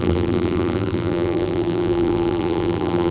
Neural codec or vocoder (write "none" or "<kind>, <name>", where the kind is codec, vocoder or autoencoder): vocoder, BigVGAN v2